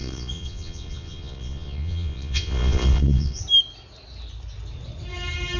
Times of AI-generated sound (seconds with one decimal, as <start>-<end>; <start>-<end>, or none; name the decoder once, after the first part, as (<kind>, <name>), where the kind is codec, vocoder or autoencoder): 0.0-3.4 (vocoder, Vocos)

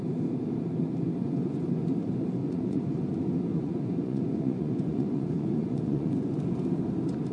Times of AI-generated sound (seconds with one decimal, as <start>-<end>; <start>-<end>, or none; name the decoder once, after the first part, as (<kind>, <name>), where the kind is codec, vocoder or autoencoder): 1.2-1.8 (vocoder, Vocos); 2.4-3.1; 3.5-6.3